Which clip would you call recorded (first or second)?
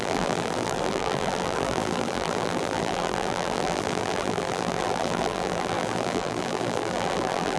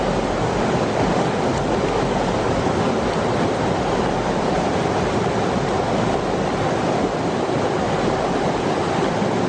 second